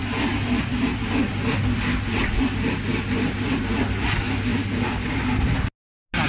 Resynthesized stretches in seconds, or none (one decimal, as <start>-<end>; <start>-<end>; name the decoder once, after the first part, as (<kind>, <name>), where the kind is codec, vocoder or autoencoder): none